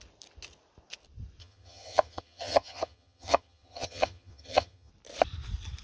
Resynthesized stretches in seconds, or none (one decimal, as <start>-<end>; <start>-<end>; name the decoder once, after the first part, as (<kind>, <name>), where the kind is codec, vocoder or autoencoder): 1.4-4.9 (vocoder, HiFi-GAN)